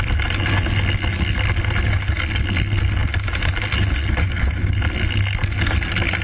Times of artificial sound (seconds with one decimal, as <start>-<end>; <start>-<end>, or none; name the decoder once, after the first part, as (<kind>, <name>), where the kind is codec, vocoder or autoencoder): none